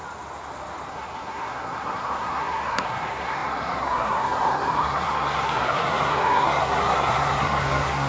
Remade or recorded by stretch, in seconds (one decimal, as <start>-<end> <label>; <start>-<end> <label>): 0.0-0.9 recorded; 0.9-8.1 remade